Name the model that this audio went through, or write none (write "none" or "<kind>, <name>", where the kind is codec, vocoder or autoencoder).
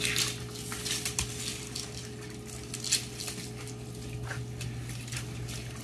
none